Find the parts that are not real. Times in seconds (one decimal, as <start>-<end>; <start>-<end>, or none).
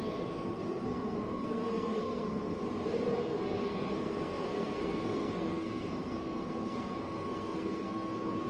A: 0.0-2.6; 3.2-8.5